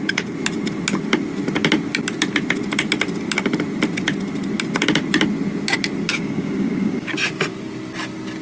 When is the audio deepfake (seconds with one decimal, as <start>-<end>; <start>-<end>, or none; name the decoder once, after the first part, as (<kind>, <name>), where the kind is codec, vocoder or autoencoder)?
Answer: 6.1-7.1 (codec, DAC)